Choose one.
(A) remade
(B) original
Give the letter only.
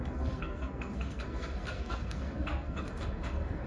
A